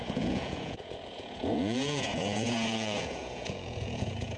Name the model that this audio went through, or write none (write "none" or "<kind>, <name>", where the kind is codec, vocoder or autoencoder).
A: vocoder, Vocos